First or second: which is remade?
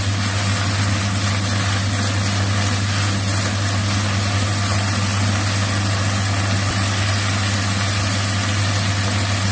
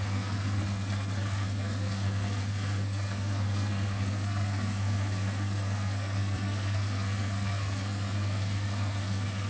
second